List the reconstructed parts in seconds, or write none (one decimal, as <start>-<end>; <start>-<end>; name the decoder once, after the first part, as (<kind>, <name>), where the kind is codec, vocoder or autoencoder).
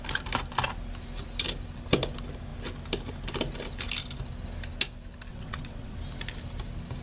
5.3-6.0 (vocoder, WaveNeXt)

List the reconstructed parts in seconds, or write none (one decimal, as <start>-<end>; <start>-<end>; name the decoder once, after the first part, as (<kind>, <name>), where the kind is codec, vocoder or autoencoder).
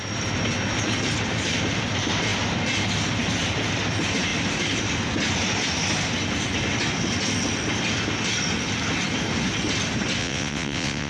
10.2-11.1 (vocoder, WaveNeXt)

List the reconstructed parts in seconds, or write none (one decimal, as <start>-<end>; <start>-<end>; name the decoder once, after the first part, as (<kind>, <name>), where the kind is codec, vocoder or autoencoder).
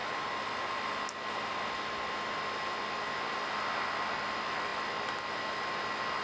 none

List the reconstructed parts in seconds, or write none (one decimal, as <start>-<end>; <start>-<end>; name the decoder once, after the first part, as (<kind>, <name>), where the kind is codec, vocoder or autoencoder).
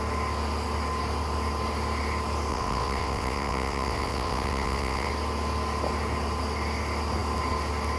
2.5-5.1 (vocoder, WaveNeXt)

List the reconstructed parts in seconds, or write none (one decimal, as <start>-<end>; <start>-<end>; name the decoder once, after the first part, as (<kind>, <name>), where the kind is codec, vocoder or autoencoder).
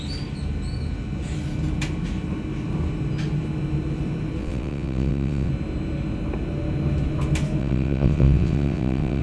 4.4-5.5 (vocoder, WaveNeXt); 7.6-9.2